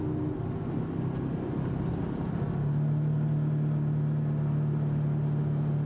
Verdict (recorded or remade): recorded